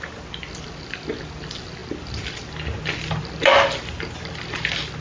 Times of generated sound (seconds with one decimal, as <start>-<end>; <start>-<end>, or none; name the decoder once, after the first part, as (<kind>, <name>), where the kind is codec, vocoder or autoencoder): none